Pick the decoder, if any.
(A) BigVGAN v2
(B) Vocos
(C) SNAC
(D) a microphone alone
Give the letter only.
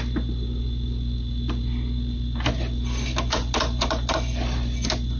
D